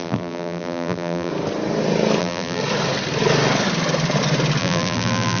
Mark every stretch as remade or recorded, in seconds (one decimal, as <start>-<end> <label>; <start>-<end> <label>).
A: 0.0-1.3 remade; 1.3-2.2 recorded; 2.2-2.6 remade; 2.6-4.6 recorded; 4.6-5.4 remade